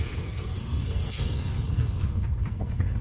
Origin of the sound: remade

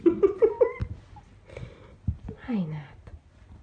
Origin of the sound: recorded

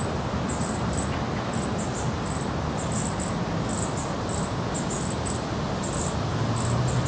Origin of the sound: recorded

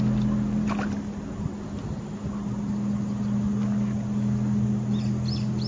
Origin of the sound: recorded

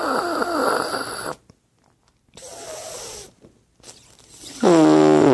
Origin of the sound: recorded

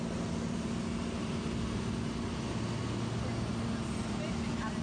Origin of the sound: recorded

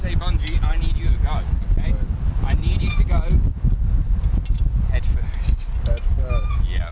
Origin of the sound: recorded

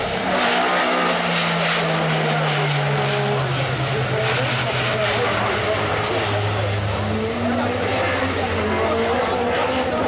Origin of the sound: recorded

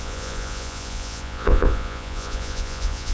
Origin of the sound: remade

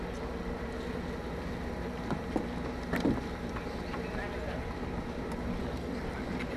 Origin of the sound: recorded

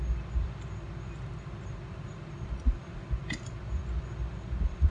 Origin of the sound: recorded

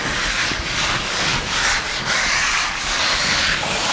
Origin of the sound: remade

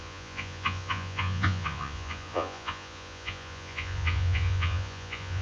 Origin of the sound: remade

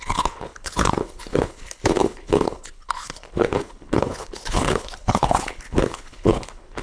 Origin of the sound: remade